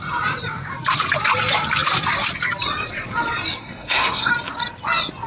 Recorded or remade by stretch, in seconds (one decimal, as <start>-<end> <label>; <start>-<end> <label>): 0.0-3.6 recorded; 3.6-4.3 remade; 4.3-5.3 recorded